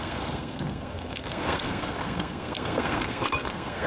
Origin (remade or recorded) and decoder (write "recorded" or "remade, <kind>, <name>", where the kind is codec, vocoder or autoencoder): remade, codec, SNAC